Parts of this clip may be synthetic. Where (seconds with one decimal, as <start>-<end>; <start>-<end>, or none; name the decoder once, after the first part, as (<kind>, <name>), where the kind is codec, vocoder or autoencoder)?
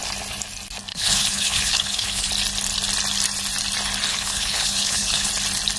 0.9-2.3 (codec, HILCodec); 4.1-5.3